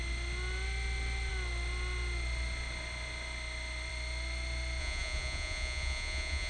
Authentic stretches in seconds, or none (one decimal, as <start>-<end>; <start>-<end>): 0.0-4.8